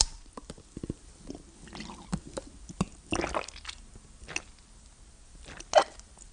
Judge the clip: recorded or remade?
recorded